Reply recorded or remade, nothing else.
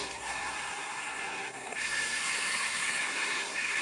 remade